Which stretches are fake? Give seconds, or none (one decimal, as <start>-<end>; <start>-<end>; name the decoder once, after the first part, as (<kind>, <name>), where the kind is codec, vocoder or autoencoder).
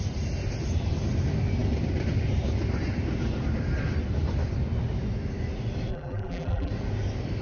5.9-6.7 (vocoder, BigVGAN v2)